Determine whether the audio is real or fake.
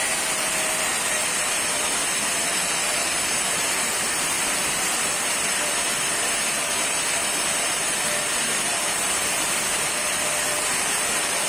fake